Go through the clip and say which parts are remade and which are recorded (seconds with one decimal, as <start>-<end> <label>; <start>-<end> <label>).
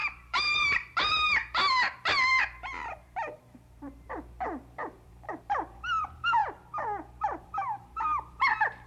0.0-6.4 remade; 6.4-7.4 recorded; 7.4-8.9 remade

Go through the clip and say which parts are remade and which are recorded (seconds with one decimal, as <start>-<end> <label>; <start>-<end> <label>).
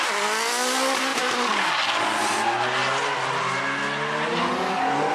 0.0-1.1 recorded; 1.1-1.7 remade; 1.7-5.1 recorded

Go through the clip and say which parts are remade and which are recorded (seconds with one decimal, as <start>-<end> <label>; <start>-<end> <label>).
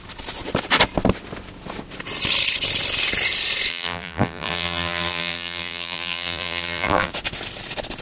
0.0-3.7 recorded; 3.7-7.1 remade; 7.1-8.0 recorded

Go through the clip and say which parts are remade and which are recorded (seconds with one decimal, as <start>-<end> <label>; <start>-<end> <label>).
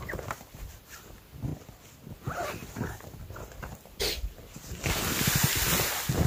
0.0-1.5 remade; 1.5-2.1 recorded; 2.1-6.3 remade